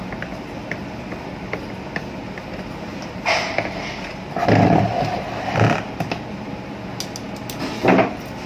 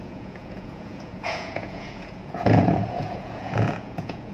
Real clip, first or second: first